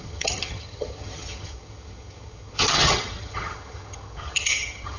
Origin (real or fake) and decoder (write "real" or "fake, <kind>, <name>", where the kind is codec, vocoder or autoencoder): fake, vocoder, HiFi-GAN